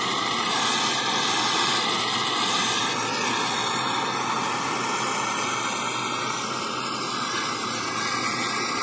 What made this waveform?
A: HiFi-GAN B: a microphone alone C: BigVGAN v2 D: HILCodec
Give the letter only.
B